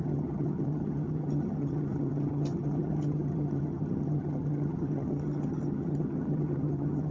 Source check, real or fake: fake